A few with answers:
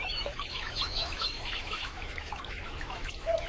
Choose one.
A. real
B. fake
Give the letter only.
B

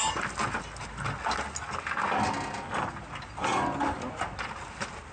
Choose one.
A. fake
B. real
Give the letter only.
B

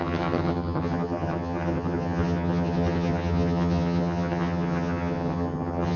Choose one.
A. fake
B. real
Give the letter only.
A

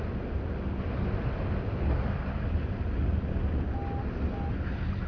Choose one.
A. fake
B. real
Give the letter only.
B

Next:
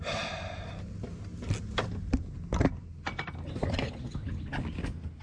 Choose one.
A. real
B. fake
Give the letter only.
A